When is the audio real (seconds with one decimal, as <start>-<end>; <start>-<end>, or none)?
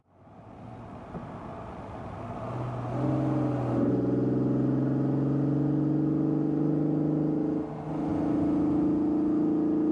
0.0-9.9